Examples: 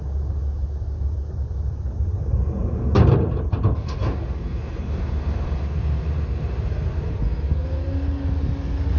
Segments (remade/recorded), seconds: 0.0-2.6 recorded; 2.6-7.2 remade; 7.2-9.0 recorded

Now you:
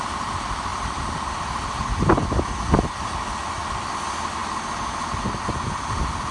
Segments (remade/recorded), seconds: 0.0-0.7 recorded; 0.7-1.4 remade; 1.4-6.3 recorded